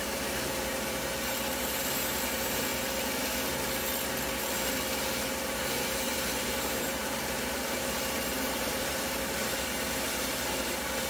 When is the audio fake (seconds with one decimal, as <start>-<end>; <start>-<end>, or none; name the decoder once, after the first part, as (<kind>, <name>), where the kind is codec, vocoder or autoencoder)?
0.0-2.7 (vocoder, BigVGAN v2); 5.5-11.1